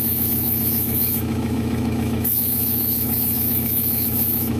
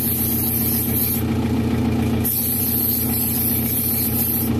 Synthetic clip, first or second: first